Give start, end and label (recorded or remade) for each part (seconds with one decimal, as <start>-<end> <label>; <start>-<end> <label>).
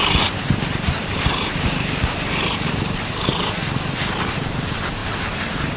0.0-3.6 remade; 3.6-4.3 recorded; 4.3-5.8 remade